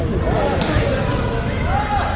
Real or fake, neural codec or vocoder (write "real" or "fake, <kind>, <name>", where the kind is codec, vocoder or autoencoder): real